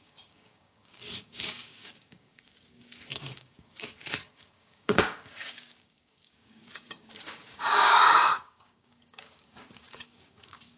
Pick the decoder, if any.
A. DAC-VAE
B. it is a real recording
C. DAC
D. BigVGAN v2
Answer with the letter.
C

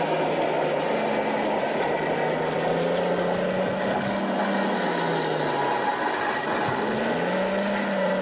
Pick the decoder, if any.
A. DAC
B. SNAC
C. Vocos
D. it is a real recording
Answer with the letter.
D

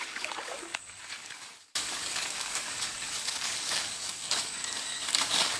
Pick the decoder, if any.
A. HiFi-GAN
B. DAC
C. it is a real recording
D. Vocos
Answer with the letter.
B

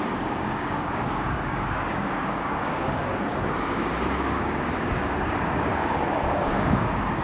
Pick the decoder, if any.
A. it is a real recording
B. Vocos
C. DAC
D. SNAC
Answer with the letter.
C